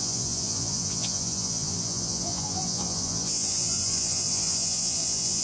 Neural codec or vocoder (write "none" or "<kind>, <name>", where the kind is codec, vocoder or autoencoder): vocoder, Vocos